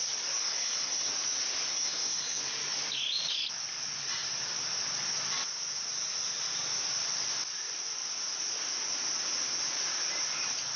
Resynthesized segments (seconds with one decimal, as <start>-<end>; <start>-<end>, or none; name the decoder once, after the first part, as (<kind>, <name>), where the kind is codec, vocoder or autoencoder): 0.4-1.1 (codec, SNAC); 1.7-2.4